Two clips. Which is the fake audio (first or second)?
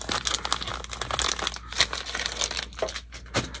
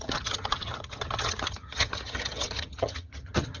second